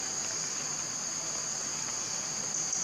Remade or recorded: recorded